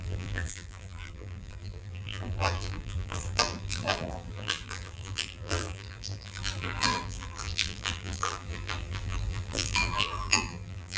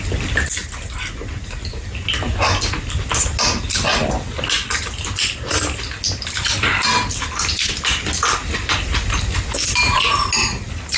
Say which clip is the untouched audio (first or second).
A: second